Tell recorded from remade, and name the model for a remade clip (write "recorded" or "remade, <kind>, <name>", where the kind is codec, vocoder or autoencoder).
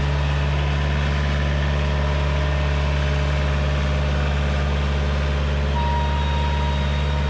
recorded